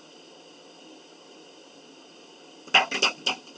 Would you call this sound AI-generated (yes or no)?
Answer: no